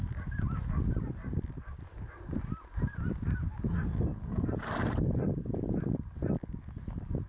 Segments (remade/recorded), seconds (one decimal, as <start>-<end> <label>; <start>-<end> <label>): 0.0-7.3 recorded